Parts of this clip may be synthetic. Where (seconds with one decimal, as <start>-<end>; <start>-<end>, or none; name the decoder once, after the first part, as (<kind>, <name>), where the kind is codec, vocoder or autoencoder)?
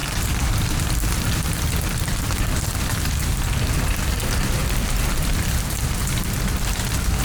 1.8-4.6 (vocoder, BigVGAN v2); 5.4-6.0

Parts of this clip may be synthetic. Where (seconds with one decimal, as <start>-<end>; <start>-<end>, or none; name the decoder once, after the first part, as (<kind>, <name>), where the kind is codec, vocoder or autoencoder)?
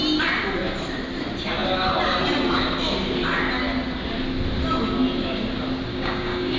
5.9-6.6 (codec, DAC)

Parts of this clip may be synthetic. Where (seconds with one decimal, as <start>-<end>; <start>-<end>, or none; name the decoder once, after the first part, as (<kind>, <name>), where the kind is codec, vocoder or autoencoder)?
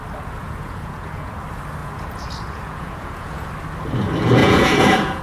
0.4-1.3 (vocoder, Vocos); 1.8-3.5; 4.4-5.2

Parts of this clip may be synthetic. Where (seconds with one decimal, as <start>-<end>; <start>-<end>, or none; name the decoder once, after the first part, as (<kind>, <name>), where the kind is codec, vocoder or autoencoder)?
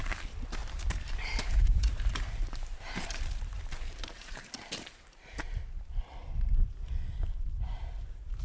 0.0-8.4 (vocoder, BigVGAN v2)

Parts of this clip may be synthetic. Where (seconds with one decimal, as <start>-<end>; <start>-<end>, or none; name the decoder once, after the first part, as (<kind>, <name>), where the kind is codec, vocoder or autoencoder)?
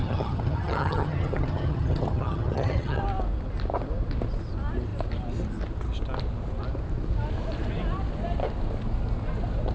0.0-3.0 (vocoder, HiFi-GAN)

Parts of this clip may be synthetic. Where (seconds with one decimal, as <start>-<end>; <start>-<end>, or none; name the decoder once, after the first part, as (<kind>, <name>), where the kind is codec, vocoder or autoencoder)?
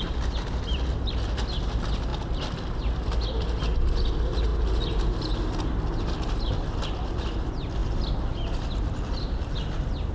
none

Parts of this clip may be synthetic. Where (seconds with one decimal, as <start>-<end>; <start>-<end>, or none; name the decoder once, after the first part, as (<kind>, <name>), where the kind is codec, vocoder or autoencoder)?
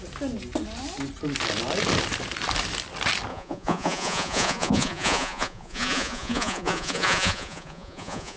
3.3-8.4 (vocoder, Vocos)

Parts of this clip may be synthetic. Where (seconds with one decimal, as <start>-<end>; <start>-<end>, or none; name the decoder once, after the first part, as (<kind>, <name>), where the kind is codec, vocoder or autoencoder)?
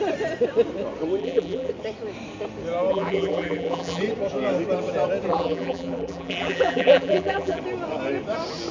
1.2-1.7 (vocoder, BigVGAN v2); 2.9-4.0; 5.3-7.6